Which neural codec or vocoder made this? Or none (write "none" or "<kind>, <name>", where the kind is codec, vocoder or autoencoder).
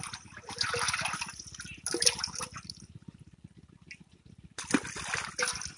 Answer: none